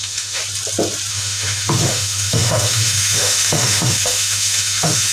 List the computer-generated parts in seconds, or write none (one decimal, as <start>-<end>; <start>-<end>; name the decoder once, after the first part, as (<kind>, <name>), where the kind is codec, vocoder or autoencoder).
0.0-0.4 (autoencoder, DAC-VAE); 1.1-5.1